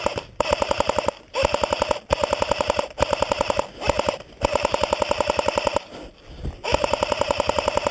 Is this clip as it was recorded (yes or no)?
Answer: yes